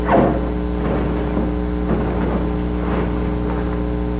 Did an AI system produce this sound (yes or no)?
no